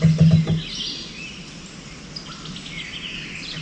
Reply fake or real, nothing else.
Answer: real